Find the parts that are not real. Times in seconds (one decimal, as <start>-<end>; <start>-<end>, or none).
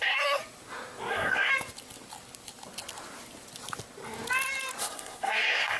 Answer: 0.0-0.4; 1.1-1.5; 4.8-5.8